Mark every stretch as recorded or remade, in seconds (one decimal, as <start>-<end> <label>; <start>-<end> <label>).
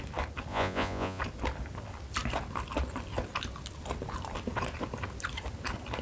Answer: 0.0-0.5 recorded; 0.5-1.2 remade; 1.2-6.0 recorded